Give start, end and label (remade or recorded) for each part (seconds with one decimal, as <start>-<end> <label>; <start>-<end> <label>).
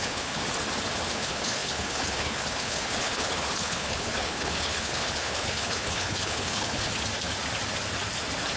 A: 0.0-0.4 remade; 0.4-1.1 recorded; 1.1-6.9 remade; 6.9-8.6 recorded